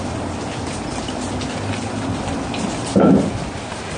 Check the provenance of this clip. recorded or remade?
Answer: recorded